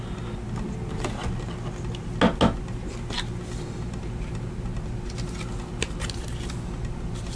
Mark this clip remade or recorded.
recorded